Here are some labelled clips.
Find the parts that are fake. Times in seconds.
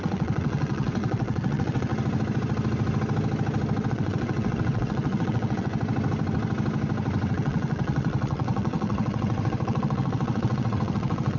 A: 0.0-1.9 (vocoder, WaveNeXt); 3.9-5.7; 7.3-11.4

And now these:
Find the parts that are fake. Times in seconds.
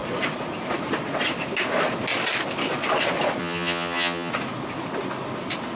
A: 3.4-4.3 (vocoder, HiFi-GAN)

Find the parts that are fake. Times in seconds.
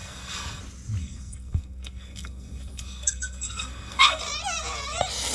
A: 0.0-0.6 (codec, SNAC); 1.0-4.2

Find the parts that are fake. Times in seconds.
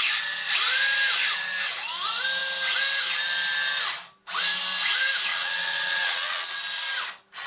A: 5.3-6.6 (vocoder, WaveNeXt)